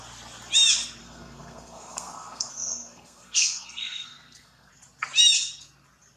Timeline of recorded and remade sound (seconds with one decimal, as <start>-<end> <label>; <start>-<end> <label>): 0.0-1.0 recorded; 1.0-4.7 remade; 4.7-6.2 recorded